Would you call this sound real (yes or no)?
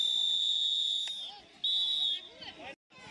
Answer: yes